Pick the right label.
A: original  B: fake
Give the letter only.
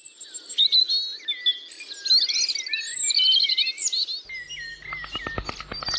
A